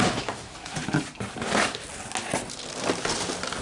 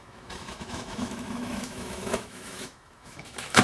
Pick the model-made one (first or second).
second